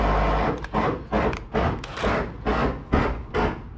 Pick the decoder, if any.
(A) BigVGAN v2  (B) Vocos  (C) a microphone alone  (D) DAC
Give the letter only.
C